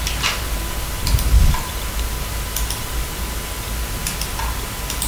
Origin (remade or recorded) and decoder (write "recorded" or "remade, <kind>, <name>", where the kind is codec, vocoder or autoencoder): recorded